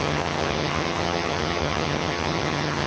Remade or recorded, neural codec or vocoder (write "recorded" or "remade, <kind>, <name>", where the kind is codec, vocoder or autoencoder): remade, vocoder, HiFi-GAN